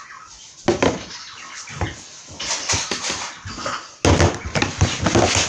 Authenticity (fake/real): real